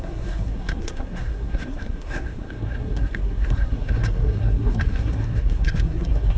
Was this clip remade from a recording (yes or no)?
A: yes